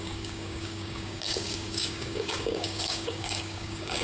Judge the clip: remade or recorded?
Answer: remade